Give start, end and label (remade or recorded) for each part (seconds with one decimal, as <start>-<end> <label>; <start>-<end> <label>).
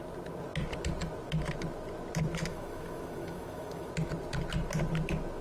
0.0-2.5 recorded; 2.5-3.9 remade; 3.9-5.4 recorded